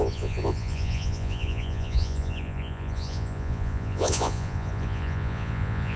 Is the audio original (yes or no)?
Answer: no